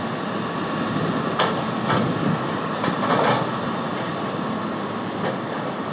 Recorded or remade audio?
recorded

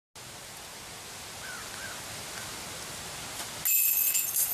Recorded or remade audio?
recorded